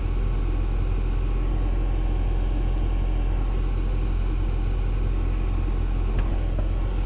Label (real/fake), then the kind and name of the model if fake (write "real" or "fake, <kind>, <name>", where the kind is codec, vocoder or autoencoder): real